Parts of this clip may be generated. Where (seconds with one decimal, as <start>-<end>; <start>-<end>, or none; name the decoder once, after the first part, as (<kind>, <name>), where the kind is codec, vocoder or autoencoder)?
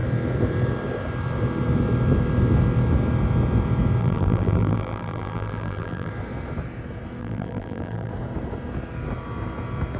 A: 4.0-6.1 (vocoder, BigVGAN v2); 7.2-8.1